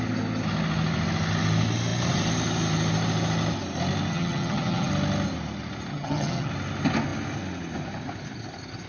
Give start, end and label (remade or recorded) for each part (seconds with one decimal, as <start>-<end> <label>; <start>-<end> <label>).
0.0-4.1 recorded; 4.1-4.9 remade; 4.9-5.9 recorded; 5.9-6.5 remade; 6.5-8.9 recorded